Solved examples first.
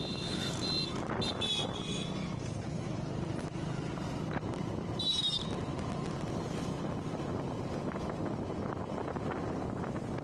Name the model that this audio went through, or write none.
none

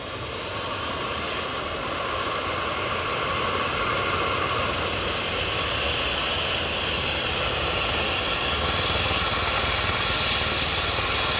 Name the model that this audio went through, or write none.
none